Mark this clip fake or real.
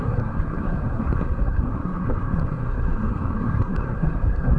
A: fake